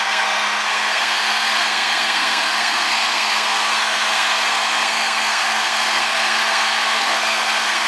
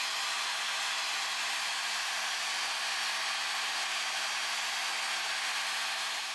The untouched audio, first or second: second